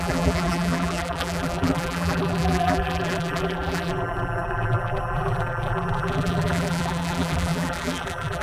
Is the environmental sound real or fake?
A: fake